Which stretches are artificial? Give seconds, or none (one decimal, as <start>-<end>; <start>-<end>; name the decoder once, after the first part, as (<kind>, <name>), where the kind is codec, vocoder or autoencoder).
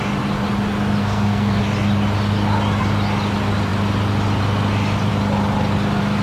1.0-1.6 (codec, SNAC)